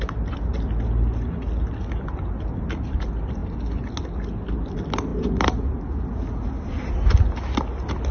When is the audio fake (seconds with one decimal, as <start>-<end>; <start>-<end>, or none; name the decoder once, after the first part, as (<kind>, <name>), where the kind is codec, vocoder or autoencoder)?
none